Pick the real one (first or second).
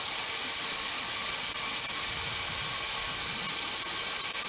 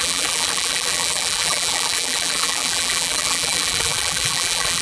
first